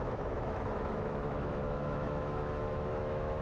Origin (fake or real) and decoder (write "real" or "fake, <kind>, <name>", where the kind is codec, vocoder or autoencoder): fake, autoencoder, DAC-VAE